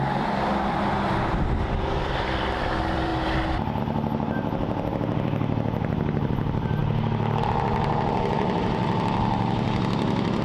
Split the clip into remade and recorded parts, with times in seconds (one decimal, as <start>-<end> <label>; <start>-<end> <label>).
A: 0.0-3.1 remade; 3.1-3.8 recorded; 3.8-6.8 remade; 6.8-8.3 recorded; 8.3-10.4 remade